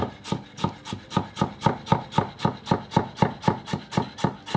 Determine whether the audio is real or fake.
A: real